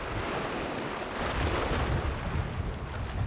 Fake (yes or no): no